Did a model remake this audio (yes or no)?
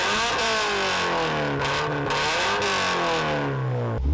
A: no